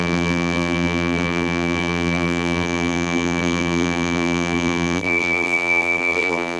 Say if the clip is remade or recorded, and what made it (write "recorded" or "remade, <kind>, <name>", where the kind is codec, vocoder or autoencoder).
remade, vocoder, BigVGAN v2